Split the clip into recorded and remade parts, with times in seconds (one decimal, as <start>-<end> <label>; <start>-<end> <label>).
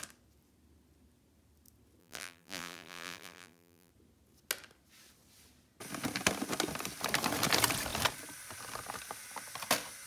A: 0.0-2.0 recorded; 2.0-3.9 remade; 3.9-10.1 recorded